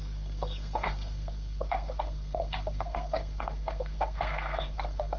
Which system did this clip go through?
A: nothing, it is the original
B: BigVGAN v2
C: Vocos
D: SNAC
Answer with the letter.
D